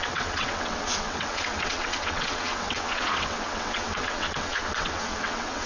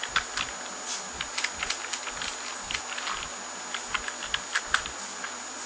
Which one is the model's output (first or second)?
first